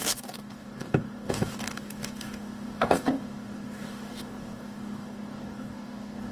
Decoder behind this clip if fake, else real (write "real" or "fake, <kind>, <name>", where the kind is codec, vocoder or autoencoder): fake, codec, DAC